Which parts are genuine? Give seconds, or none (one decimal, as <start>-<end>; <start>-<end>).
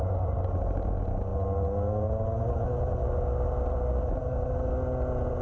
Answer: 0.0-5.4